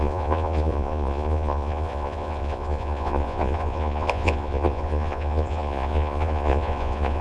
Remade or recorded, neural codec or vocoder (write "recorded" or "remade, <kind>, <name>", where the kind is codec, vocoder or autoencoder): remade, vocoder, Vocos